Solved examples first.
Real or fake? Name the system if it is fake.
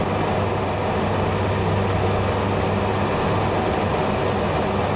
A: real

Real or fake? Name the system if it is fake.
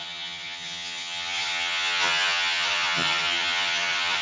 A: fake, vocoder, HiFi-GAN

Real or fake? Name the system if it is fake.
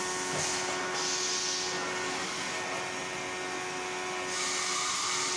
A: real